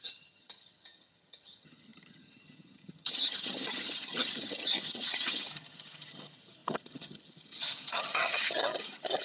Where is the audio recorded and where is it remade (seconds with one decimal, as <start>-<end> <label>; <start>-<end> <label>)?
0.0-9.2 remade